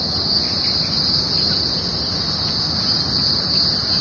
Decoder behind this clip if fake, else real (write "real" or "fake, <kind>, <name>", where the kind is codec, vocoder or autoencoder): real